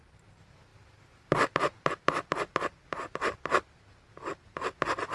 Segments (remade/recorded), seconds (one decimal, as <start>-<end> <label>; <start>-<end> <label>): 0.0-0.7 recorded; 0.7-3.8 remade; 3.8-5.1 recorded